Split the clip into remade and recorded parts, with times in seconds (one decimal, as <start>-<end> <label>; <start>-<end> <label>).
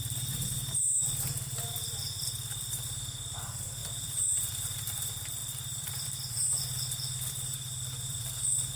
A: 0.0-8.8 remade